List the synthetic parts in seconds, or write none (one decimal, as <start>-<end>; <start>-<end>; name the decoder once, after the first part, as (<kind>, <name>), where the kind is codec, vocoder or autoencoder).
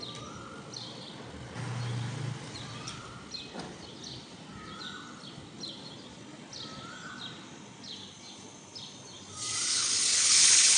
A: 9.7-10.8 (codec, HILCodec)